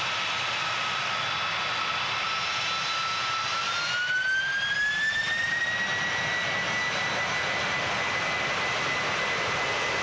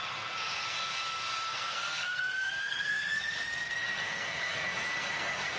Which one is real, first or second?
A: first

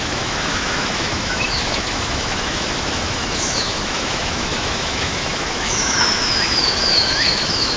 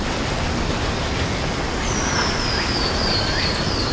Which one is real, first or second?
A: second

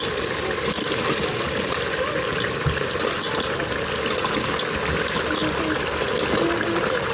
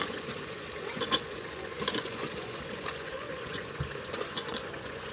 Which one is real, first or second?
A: first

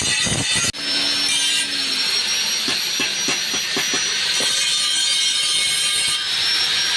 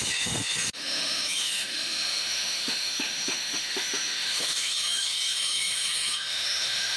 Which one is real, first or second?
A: first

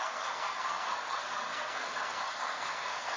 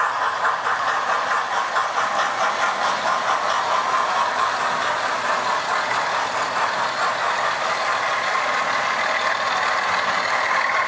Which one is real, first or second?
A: second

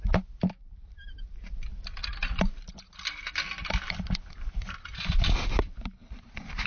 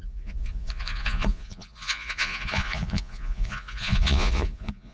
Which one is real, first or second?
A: first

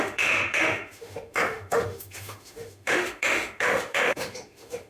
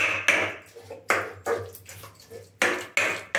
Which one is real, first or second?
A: second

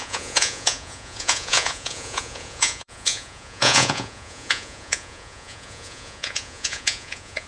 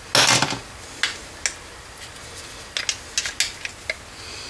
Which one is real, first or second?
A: second